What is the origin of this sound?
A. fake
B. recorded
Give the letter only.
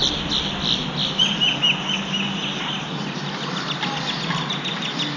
B